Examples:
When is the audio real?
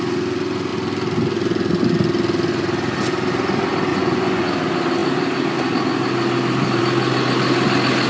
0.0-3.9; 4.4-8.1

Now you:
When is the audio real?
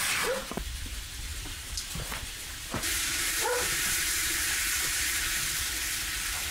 0.0-1.3; 5.2-6.5